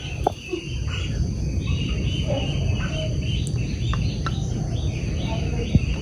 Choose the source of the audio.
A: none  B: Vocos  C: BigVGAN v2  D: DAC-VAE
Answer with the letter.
A